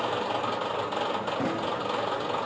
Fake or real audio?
real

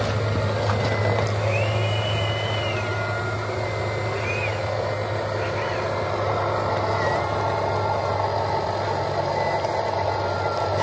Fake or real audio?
real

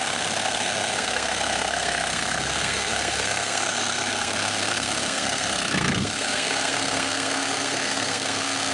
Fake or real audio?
fake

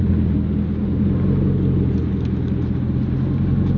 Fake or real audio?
real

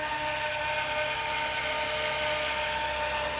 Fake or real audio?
real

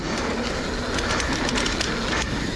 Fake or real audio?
real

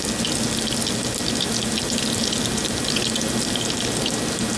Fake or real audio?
real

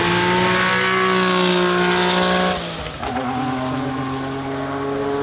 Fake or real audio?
real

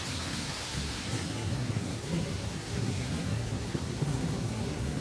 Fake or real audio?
fake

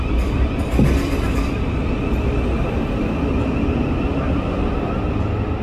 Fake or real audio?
real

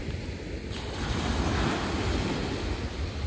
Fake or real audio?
real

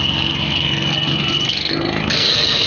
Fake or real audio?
fake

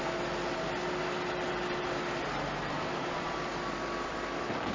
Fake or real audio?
real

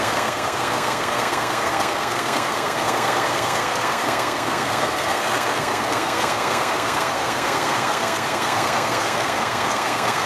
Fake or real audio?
fake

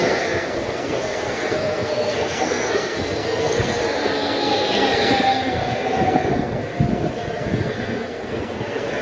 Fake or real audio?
fake